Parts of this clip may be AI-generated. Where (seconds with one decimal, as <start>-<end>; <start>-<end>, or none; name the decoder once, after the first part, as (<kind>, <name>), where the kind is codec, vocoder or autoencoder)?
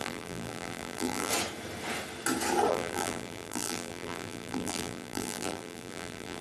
0.0-1.3 (vocoder, BigVGAN v2); 2.7-6.4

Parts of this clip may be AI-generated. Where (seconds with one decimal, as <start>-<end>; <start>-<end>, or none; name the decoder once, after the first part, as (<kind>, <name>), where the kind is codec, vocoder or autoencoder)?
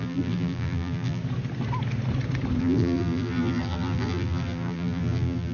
0.0-1.2 (vocoder, BigVGAN v2); 2.6-5.5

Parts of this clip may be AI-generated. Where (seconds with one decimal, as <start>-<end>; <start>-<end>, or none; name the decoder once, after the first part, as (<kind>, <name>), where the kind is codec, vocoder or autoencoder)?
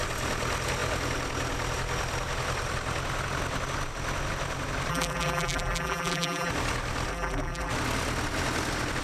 4.9-6.5 (vocoder, BigVGAN v2); 7.1-7.7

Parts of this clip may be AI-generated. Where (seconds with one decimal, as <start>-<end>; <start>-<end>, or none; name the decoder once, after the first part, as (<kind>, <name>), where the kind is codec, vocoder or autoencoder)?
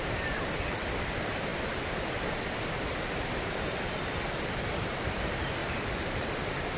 1.5-3.4 (vocoder, BigVGAN v2); 5.6-6.8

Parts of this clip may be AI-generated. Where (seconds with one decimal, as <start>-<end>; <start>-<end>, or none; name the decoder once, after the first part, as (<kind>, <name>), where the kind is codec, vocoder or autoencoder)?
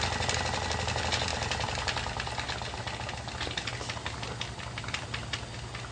none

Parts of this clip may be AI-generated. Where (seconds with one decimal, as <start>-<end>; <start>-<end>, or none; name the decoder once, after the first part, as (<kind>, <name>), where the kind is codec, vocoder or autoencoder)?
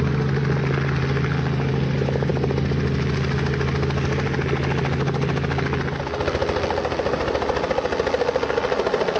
none